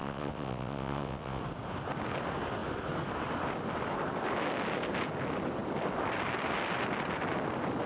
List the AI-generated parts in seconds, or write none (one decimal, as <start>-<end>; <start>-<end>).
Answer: 0.0-1.4